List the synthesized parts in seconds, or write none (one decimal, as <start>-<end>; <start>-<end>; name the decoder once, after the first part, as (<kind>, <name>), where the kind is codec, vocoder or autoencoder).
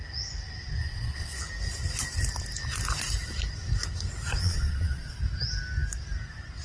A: 0.8-1.4 (vocoder, Vocos); 4.4-5.2